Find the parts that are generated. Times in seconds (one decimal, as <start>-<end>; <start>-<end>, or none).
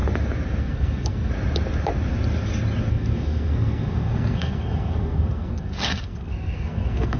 0.6-1.3; 2.9-7.2